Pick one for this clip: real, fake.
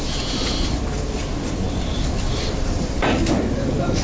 fake